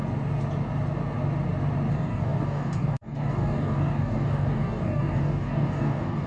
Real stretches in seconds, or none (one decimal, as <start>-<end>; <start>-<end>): 0.0-1.9